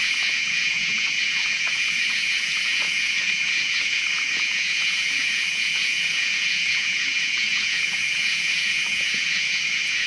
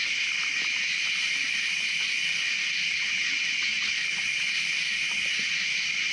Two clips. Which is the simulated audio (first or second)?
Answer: first